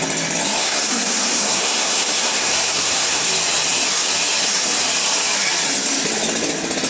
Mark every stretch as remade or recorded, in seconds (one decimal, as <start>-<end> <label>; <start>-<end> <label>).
0.0-0.6 recorded; 0.6-3.3 remade; 3.3-6.9 recorded